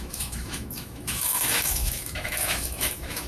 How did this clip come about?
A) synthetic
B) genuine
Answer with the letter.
A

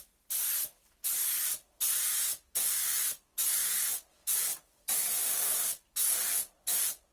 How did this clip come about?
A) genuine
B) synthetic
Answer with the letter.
A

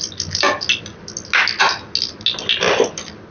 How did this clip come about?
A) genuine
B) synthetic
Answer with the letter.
A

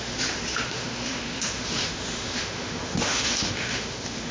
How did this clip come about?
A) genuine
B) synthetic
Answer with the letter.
B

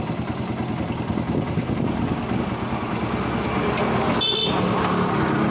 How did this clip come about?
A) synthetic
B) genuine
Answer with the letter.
B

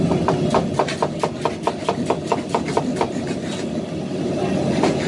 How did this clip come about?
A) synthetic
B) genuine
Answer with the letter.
B